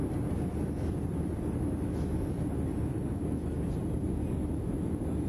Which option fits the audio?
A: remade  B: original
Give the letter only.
B